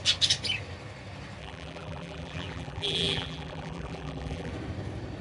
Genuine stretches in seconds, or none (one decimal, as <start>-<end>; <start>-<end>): 0.0-1.4; 4.5-5.2